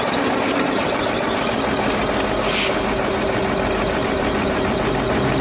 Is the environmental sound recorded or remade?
recorded